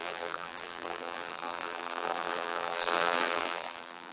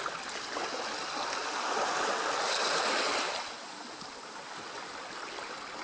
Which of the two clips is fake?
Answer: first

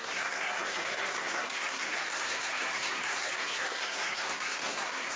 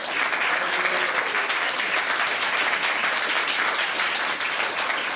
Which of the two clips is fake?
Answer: first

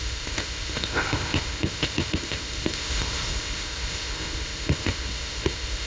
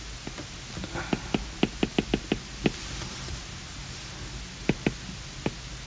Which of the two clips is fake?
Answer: first